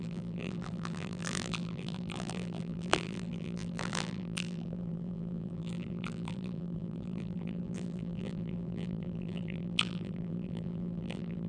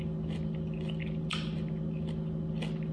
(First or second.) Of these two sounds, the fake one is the first